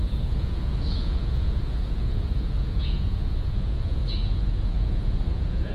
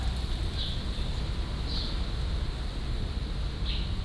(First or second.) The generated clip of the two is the first